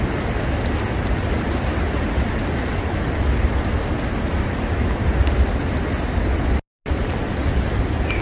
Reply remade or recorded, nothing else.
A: recorded